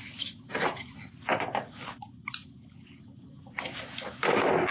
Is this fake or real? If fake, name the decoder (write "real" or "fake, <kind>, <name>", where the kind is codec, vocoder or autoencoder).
real